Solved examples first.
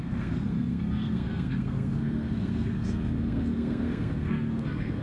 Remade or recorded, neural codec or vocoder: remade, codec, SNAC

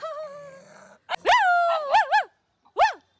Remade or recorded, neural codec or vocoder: recorded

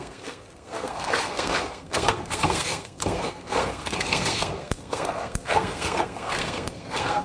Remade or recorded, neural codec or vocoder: remade, codec, SNAC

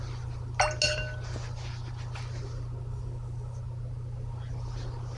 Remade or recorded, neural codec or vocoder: recorded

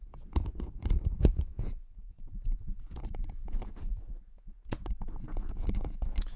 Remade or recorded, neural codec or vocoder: remade, vocoder, Vocos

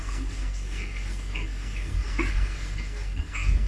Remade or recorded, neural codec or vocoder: remade, codec, SNAC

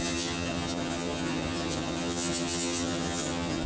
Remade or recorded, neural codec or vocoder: remade, vocoder, HiFi-GAN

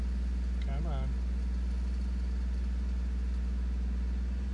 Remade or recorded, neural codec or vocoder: recorded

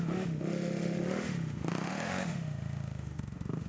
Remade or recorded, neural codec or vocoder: remade, autoencoder, DAC-VAE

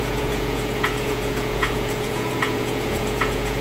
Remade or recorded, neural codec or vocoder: remade, vocoder, Vocos